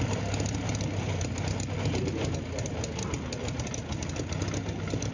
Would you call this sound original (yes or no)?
yes